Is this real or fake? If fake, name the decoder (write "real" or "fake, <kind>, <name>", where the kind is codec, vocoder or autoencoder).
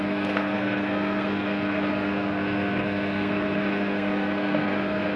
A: fake, codec, SNAC